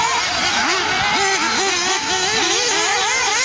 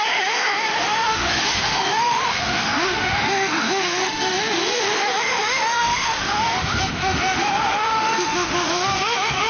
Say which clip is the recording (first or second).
first